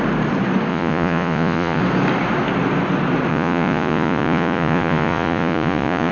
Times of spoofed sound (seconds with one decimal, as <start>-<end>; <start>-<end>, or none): 0.7-1.8; 3.3-6.1